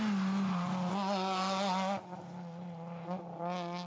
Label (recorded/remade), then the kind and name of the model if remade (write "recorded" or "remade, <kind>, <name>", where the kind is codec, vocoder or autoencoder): recorded